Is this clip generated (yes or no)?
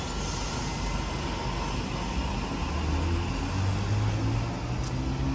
no